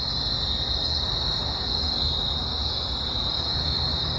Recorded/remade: recorded